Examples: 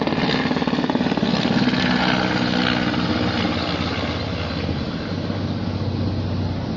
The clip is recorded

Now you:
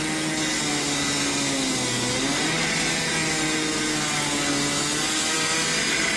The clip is recorded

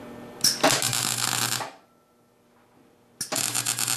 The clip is recorded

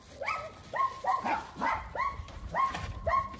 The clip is recorded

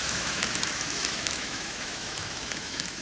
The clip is remade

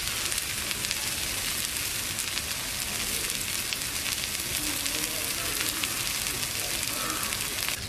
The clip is recorded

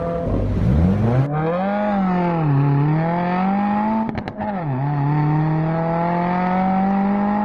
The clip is recorded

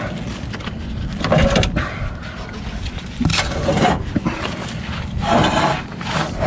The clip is recorded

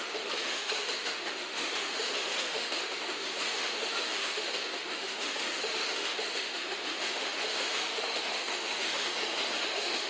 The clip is remade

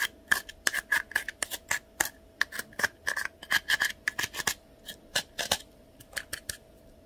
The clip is recorded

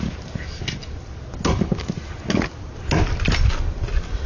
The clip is recorded